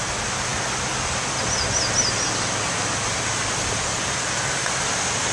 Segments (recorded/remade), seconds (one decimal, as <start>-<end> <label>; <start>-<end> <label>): 0.0-5.3 recorded